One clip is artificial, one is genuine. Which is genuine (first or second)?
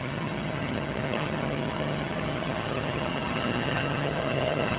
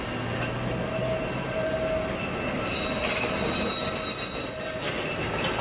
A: second